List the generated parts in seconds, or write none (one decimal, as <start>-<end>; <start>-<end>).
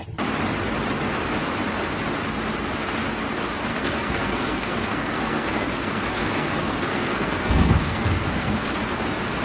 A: 3.7-8.7